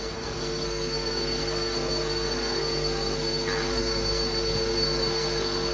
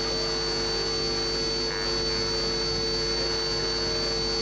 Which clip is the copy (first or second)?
first